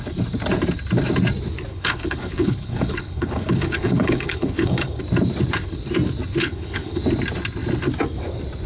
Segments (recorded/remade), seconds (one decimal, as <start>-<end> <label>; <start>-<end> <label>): 0.0-1.7 recorded; 1.7-5.0 remade; 5.0-6.4 recorded; 6.4-7.0 remade; 7.0-8.7 recorded